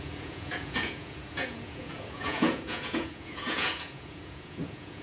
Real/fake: fake